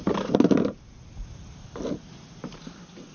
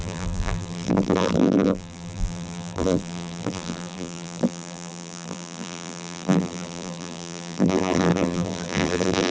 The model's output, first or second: second